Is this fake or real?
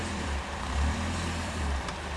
fake